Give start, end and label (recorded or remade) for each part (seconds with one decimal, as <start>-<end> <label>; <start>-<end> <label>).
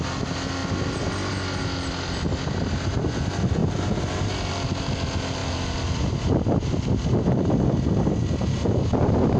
0.0-9.4 recorded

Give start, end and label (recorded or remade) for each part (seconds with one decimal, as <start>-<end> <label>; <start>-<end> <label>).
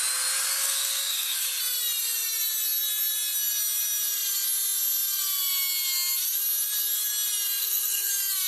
0.0-0.5 recorded; 0.5-1.6 remade; 1.6-7.6 recorded; 7.6-8.1 remade; 8.1-8.5 recorded